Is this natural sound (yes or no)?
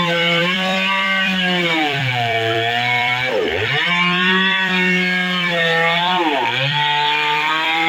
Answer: no